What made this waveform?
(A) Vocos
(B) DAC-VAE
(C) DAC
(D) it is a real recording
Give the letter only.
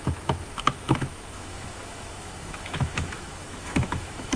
B